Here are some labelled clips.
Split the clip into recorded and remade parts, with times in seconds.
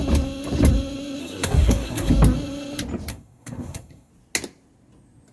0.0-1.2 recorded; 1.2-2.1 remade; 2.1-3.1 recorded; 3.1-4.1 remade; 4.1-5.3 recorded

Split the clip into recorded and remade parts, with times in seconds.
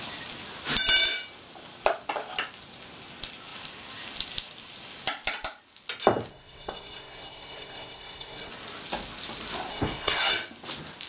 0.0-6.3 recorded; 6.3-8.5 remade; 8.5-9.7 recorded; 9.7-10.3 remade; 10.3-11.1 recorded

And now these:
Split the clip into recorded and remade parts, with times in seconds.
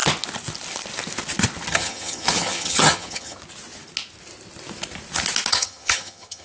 0.0-1.7 recorded; 1.7-3.4 remade; 3.4-5.5 recorded; 5.5-6.4 remade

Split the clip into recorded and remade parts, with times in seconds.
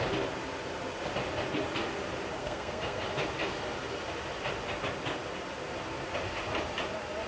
0.0-2.4 recorded; 2.4-3.0 remade; 3.0-7.3 recorded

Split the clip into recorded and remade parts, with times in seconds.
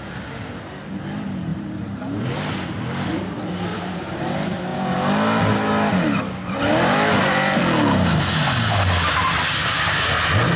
0.0-1.5 recorded; 1.5-2.5 remade; 2.5-3.7 recorded; 3.7-4.2 remade; 4.2-10.6 recorded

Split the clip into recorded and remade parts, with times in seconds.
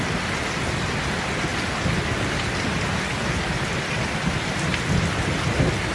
0.0-5.9 recorded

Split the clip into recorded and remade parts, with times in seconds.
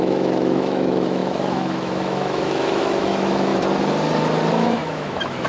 0.0-3.5 remade; 3.5-4.5 recorded; 4.5-5.5 remade